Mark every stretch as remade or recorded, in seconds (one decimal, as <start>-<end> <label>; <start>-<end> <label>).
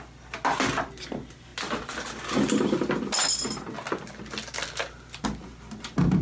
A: 0.0-6.2 recorded